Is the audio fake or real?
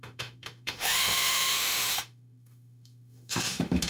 fake